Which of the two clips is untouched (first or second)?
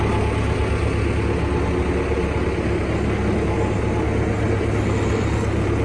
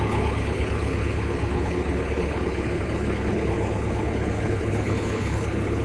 first